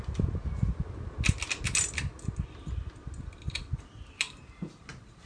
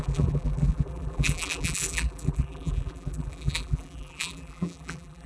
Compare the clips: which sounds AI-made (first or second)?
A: second